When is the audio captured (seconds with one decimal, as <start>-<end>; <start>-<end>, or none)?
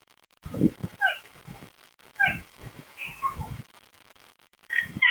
none